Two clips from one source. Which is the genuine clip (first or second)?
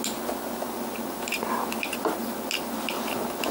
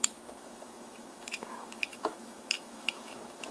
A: first